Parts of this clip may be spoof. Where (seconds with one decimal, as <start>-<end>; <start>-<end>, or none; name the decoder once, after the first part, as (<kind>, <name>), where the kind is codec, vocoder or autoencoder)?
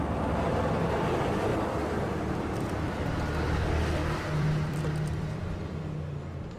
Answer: 1.5-5.5 (vocoder, BigVGAN v2)